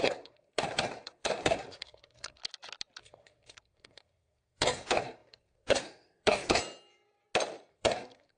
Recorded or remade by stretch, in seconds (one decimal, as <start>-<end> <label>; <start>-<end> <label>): 0.0-2.4 remade; 2.4-3.0 recorded; 3.0-6.6 remade; 6.6-7.7 recorded; 7.7-8.4 remade